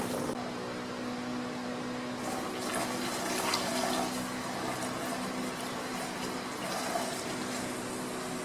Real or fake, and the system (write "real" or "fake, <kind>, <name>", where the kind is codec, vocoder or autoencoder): real